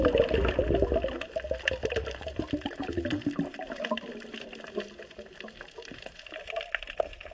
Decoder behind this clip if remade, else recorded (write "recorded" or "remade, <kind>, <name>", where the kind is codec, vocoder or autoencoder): recorded